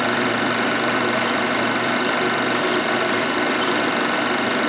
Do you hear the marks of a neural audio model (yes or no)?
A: yes